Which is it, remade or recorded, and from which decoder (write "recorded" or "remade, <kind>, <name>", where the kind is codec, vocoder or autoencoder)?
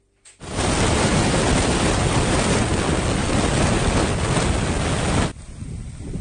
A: recorded